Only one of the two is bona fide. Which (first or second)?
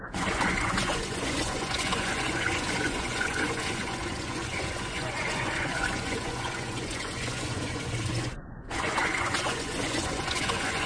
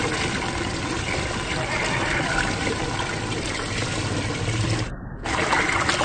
second